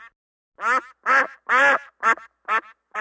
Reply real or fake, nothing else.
real